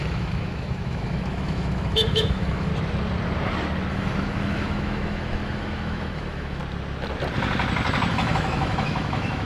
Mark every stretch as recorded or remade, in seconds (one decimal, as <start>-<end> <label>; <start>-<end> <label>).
0.0-2.7 remade; 2.7-3.9 recorded; 3.9-6.6 remade; 6.6-8.1 recorded; 8.1-9.5 remade